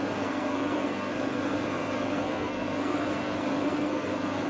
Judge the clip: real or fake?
fake